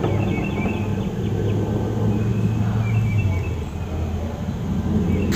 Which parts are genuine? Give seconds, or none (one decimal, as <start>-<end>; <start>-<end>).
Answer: 0.0-5.4